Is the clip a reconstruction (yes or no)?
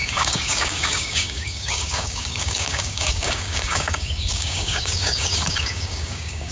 yes